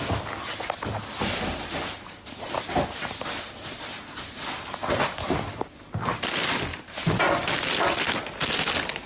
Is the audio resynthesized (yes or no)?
no